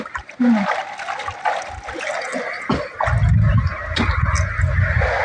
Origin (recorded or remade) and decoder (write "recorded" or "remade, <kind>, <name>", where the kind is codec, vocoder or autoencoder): recorded